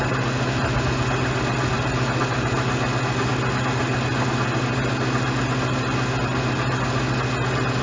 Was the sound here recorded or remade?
recorded